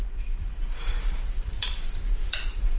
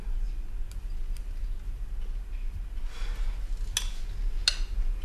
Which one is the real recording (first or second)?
second